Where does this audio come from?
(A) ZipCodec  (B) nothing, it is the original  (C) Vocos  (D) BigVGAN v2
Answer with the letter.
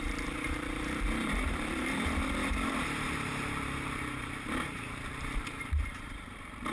D